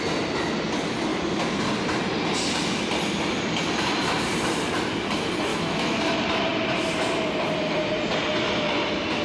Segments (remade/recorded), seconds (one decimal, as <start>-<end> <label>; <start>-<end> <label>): 0.0-5.5 recorded; 5.5-6.0 remade; 6.0-9.2 recorded